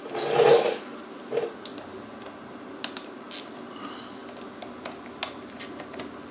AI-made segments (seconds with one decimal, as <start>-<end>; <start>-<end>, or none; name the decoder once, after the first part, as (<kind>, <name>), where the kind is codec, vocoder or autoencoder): none